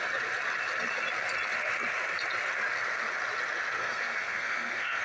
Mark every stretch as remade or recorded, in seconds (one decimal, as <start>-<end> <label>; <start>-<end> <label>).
0.0-3.8 recorded; 3.8-5.0 remade